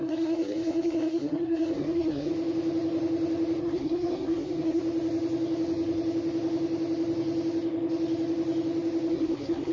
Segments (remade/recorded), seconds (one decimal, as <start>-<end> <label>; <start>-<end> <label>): 0.0-2.3 remade; 2.3-3.6 recorded; 3.6-4.8 remade; 4.8-9.1 recorded; 9.1-9.7 remade